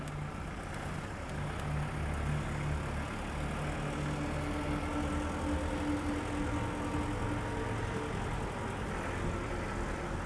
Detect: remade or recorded recorded